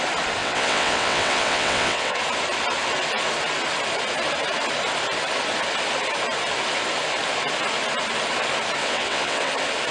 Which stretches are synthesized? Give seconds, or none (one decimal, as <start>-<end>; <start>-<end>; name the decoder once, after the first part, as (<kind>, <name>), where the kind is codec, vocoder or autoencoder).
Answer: 0.4-2.2 (vocoder, WaveNeXt); 8.8-9.5